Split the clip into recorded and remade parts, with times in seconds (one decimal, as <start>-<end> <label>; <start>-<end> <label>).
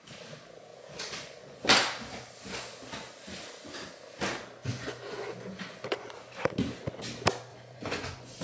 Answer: 0.0-0.7 recorded; 0.7-1.6 remade; 1.6-4.6 recorded; 4.6-6.1 remade; 6.1-7.5 recorded; 7.5-8.4 remade